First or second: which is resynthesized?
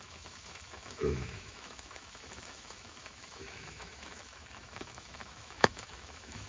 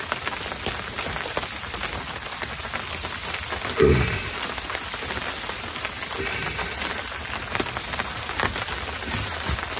first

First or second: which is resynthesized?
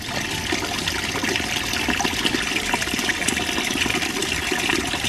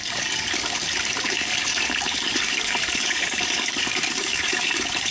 second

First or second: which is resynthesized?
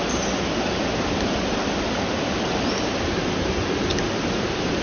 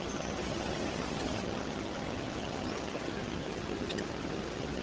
second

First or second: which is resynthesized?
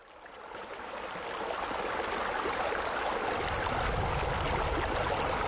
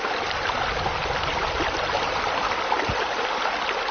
second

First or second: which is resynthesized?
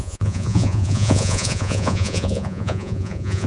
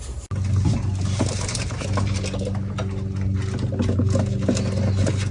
first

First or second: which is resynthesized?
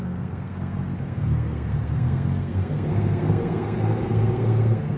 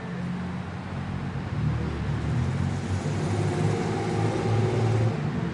first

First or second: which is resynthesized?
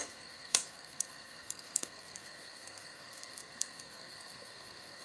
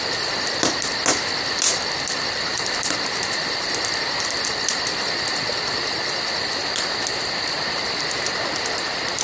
first